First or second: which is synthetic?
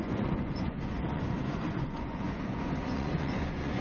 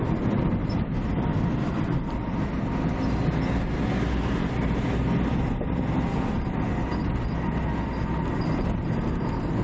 first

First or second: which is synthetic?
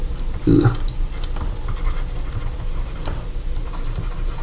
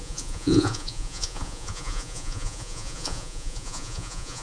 second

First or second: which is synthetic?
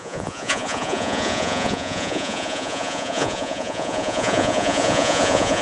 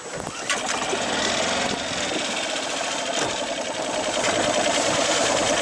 first